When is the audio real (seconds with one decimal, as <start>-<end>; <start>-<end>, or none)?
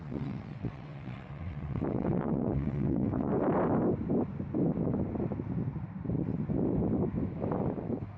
3.3-8.2